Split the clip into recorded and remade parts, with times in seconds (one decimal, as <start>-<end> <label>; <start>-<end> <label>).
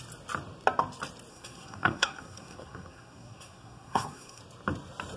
0.0-1.3 recorded; 1.3-4.4 remade; 4.4-5.2 recorded